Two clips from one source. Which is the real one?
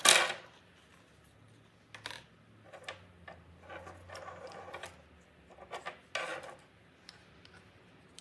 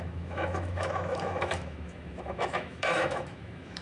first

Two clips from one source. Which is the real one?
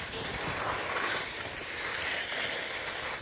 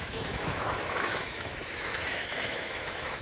first